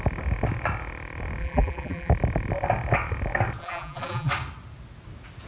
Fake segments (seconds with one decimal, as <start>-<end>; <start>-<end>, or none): 1.4-2.1; 3.6-4.3

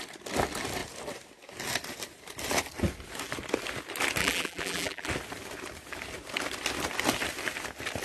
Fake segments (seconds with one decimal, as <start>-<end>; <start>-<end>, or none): 4.2-5.1

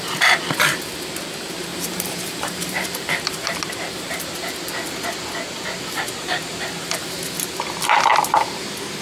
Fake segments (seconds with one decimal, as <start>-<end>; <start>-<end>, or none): 1.7-4.1; 8.1-8.6

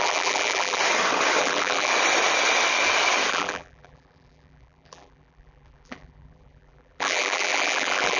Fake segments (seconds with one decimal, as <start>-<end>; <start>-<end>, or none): 0.0-0.8; 1.4-1.9; 3.3-8.2

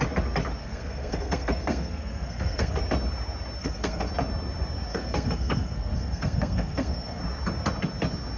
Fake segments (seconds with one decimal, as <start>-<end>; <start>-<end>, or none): 0.6-2.8; 3.6-4.1; 4.9-7.2